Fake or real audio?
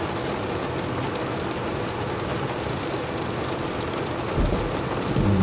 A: real